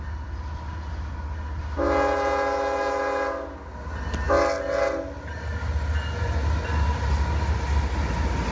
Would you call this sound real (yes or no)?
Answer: yes